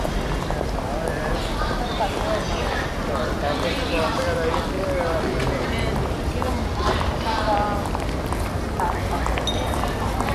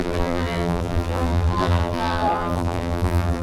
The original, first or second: first